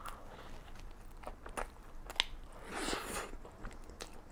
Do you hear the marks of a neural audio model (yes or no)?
no